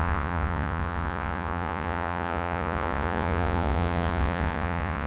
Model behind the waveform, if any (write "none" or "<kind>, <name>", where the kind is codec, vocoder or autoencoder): vocoder, Vocos